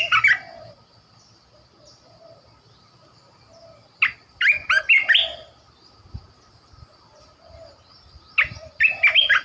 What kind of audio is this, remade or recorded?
recorded